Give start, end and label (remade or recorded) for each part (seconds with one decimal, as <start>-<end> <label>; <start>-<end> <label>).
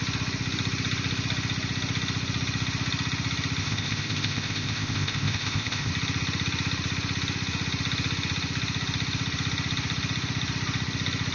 0.0-3.6 recorded; 3.6-5.9 remade; 5.9-11.3 recorded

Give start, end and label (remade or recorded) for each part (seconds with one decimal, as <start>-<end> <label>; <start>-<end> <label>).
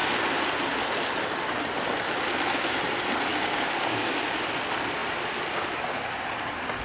0.0-3.3 recorded; 3.3-4.4 remade; 4.4-6.8 recorded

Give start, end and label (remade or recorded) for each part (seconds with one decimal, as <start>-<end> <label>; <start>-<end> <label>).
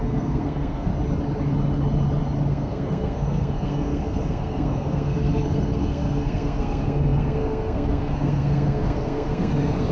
0.0-0.9 remade; 0.9-2.5 recorded; 2.5-9.9 remade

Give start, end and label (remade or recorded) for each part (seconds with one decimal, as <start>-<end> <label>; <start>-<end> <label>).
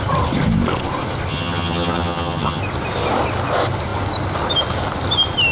0.0-1.3 recorded; 1.3-2.6 remade; 2.6-5.5 recorded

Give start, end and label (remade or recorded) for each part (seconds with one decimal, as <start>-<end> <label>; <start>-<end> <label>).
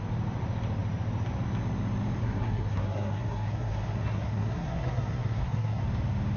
0.0-2.2 recorded; 2.2-5.8 remade; 5.8-6.4 recorded